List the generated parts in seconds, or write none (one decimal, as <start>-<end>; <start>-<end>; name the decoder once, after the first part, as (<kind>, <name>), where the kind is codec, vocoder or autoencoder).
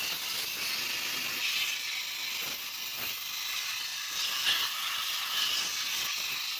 3.9-5.5 (vocoder, BigVGAN v2)